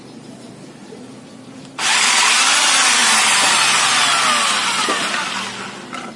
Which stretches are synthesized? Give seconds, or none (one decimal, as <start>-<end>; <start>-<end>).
none